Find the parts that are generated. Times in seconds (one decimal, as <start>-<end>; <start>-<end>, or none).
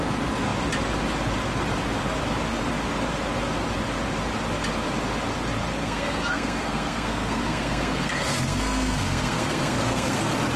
5.8-10.2